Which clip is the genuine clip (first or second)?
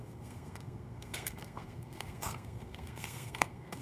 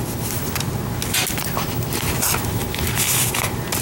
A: second